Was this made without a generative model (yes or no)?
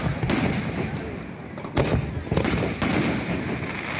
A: yes